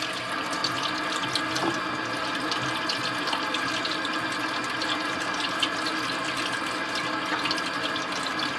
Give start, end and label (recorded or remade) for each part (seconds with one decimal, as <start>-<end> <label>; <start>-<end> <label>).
0.0-8.6 recorded